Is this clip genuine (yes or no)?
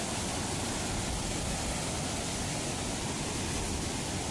yes